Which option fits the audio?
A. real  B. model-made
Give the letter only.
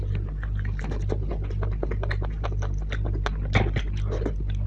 A